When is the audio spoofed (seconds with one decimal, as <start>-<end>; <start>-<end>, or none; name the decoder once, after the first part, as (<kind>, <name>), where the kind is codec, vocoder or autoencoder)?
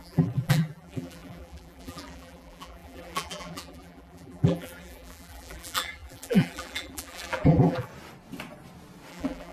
0.0-7.9 (vocoder, BigVGAN v2); 9.1-9.5